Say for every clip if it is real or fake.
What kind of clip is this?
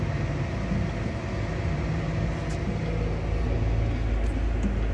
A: real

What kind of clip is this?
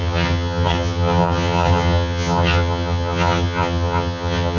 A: fake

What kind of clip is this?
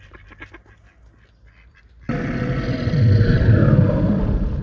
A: real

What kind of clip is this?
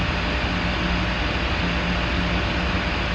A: real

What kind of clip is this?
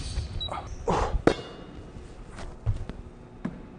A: real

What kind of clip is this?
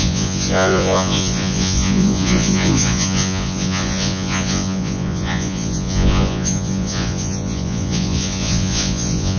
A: fake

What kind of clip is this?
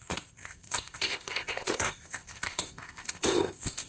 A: fake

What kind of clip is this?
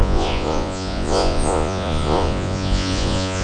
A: fake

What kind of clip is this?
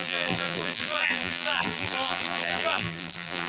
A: fake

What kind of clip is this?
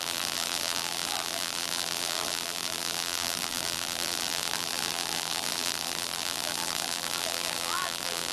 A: fake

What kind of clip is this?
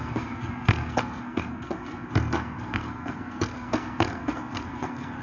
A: fake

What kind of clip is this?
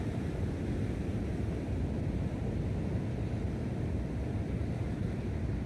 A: real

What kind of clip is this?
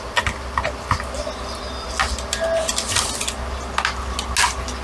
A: real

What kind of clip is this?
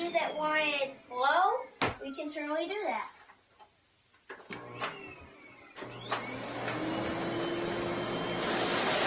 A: real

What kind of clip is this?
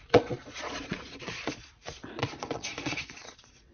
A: fake